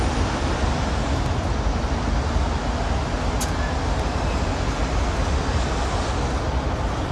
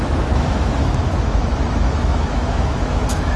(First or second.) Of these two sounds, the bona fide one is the first